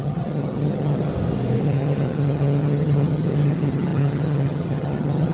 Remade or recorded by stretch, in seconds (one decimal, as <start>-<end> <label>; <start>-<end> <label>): 0.0-1.1 remade; 1.1-1.6 recorded; 1.6-5.3 remade